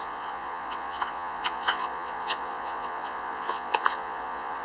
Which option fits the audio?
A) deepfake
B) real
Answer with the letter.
A